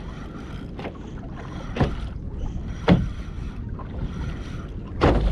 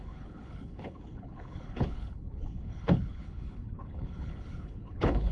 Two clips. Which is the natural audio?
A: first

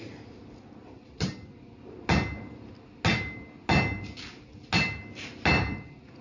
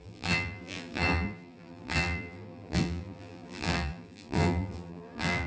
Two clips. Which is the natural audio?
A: first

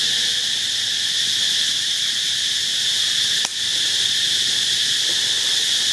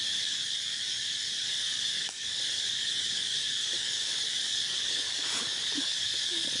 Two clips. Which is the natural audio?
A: first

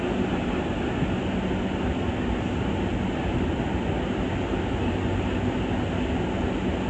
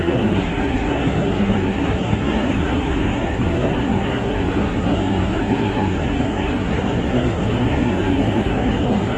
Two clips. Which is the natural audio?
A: first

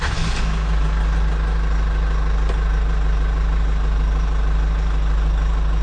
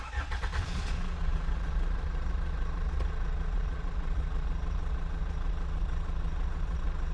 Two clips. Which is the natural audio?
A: first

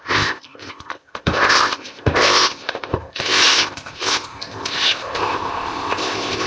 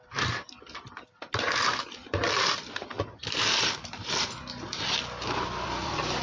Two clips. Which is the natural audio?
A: second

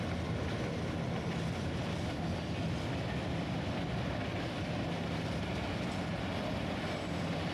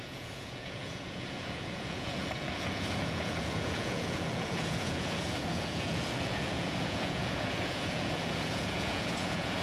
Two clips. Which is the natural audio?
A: first